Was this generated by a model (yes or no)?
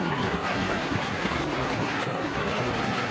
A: yes